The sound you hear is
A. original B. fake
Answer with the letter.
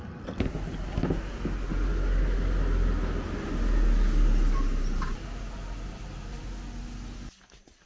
A